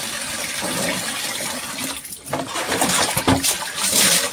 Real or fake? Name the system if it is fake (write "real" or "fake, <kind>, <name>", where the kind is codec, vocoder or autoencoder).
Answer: real